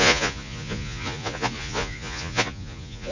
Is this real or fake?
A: fake